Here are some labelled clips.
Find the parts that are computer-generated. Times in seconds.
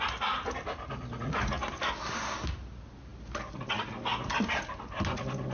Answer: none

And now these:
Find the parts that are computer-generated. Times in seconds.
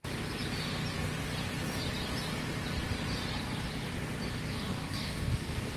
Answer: 4.7-5.8 (codec, SNAC)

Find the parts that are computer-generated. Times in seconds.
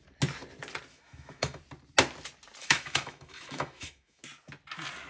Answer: 0.9-1.6 (autoencoder, DAC-VAE); 2.6-4.2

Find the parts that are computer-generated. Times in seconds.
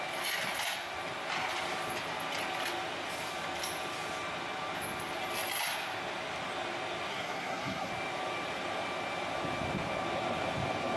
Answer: 7.1-7.9 (codec, SNAC)